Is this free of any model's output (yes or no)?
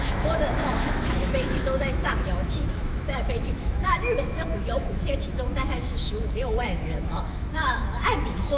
no